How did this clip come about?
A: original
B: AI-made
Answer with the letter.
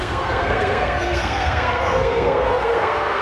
B